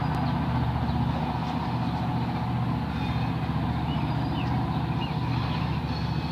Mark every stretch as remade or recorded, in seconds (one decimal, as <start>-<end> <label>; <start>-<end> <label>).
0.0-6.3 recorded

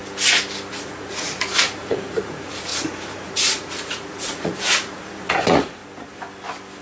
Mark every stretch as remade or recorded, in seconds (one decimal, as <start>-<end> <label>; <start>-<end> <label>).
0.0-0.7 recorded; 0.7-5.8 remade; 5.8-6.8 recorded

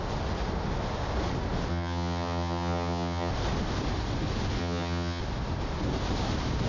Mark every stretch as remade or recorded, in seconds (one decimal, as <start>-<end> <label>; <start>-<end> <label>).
0.0-1.7 recorded; 1.7-3.3 remade; 3.3-4.6 recorded; 4.6-5.2 remade; 5.2-6.7 recorded

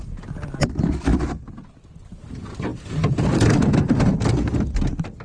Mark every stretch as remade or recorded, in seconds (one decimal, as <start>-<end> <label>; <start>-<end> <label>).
0.0-5.2 recorded